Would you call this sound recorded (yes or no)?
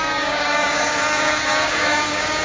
no